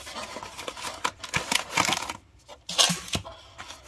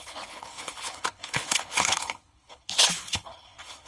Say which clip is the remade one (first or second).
second